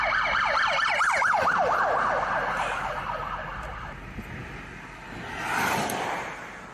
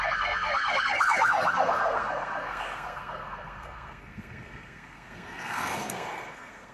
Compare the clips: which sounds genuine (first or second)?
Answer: first